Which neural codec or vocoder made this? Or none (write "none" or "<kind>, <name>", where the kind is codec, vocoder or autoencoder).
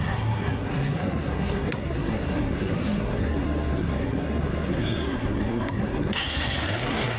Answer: codec, SNAC